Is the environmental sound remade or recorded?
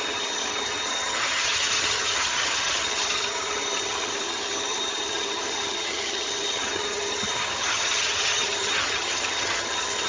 remade